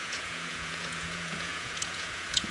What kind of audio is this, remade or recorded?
remade